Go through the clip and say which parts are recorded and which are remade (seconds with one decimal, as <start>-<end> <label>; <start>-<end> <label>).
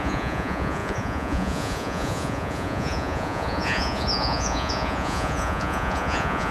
0.0-6.5 remade